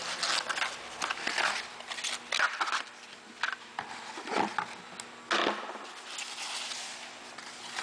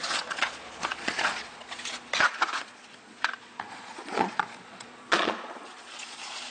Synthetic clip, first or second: second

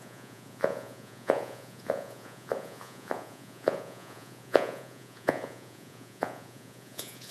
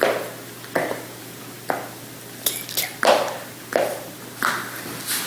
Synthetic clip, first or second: first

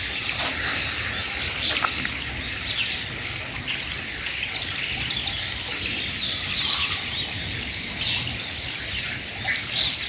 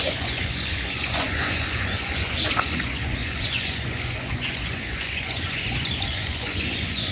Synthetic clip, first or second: second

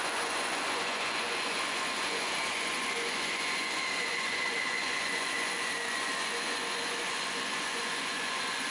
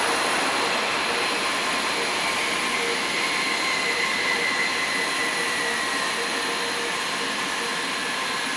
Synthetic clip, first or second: first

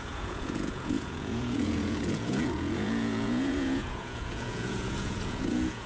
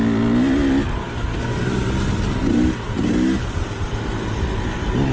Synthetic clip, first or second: first